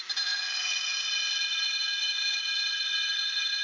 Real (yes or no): yes